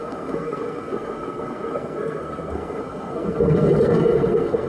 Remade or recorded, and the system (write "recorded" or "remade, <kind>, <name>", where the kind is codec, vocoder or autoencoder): remade, codec, SNAC